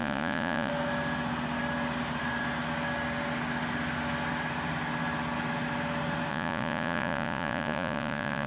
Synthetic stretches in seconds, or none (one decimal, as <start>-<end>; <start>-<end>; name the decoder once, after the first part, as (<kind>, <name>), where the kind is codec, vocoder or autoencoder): 0.0-0.7 (vocoder, Vocos); 6.3-8.5